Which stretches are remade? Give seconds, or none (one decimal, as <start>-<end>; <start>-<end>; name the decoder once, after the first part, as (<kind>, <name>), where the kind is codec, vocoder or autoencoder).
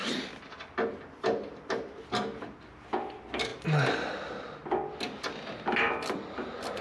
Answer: none